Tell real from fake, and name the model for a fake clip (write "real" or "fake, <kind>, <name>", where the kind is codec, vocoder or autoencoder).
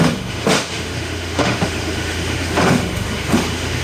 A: fake, autoencoder, DAC-VAE